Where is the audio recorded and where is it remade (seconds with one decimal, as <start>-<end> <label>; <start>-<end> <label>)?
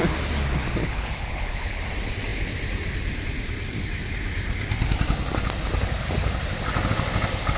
0.0-0.8 recorded; 0.8-1.8 remade; 1.8-7.6 recorded